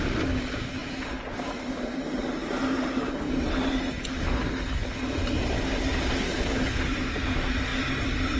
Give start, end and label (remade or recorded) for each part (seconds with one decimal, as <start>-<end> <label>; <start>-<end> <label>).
0.0-8.4 recorded